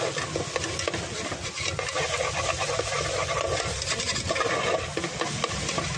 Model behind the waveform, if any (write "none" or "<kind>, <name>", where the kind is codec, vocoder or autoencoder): none